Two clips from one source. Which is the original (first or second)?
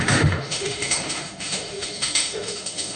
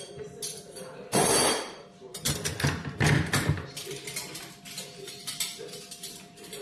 second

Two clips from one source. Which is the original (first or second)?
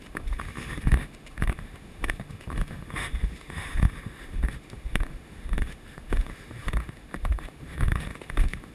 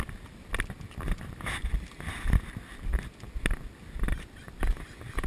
second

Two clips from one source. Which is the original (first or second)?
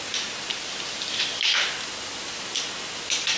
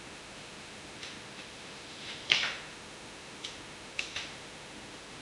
first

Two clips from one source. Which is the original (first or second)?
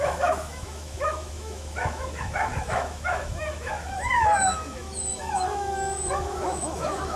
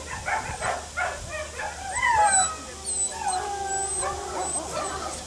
second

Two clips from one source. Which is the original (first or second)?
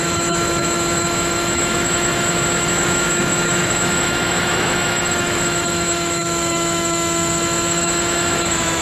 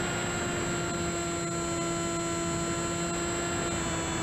second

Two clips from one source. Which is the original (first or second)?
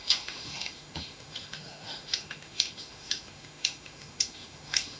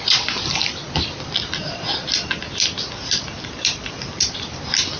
second